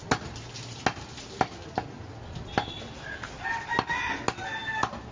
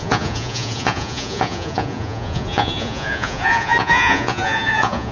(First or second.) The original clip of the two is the first